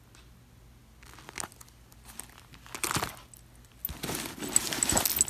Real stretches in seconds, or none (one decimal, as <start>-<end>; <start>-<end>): 0.0-5.3